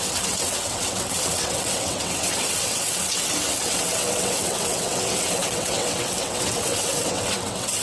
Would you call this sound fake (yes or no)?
yes